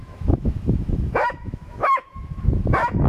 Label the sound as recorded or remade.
remade